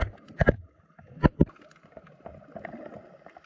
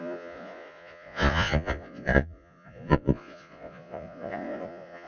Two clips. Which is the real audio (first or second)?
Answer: first